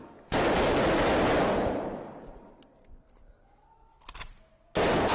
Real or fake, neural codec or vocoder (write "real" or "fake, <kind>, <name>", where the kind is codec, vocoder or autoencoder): real